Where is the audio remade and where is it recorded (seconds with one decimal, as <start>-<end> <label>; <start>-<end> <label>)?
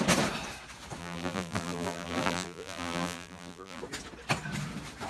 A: 0.0-1.0 recorded; 1.0-3.8 remade; 3.8-5.1 recorded